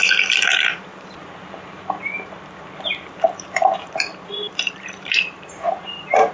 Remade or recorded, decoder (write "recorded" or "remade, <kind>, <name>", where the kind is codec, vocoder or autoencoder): remade, vocoder, BigVGAN v2